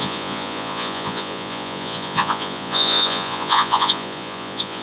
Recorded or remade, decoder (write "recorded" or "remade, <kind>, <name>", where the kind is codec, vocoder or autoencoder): remade, vocoder, Vocos